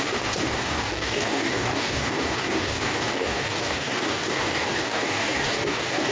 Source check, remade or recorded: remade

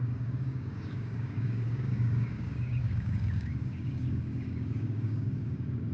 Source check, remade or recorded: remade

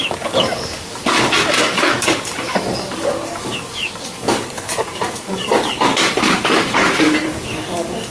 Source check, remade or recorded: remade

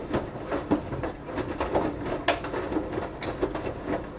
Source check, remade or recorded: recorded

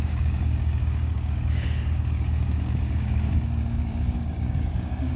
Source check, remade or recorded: remade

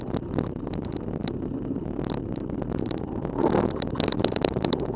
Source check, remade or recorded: recorded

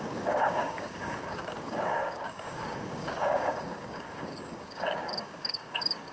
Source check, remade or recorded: remade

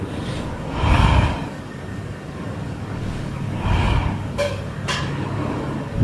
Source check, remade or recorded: remade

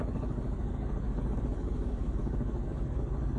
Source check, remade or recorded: remade